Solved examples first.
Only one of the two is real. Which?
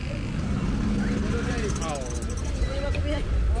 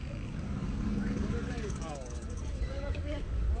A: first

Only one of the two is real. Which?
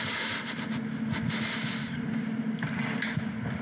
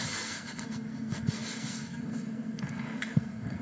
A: first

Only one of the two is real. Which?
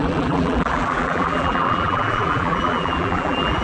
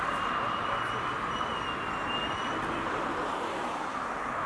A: second